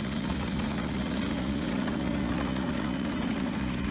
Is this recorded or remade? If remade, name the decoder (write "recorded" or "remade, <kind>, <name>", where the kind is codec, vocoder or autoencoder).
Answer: remade, vocoder, Vocos